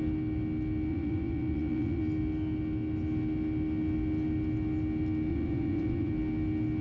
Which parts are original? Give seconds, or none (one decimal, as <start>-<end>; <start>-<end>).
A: 0.0-0.9; 2.0-5.3; 6.1-6.8